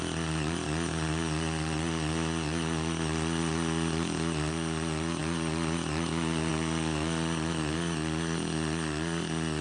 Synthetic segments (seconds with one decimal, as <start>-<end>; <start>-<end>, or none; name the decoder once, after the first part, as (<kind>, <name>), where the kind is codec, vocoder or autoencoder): none